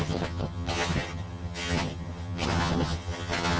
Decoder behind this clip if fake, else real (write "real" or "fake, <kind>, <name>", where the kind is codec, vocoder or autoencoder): fake, vocoder, HiFi-GAN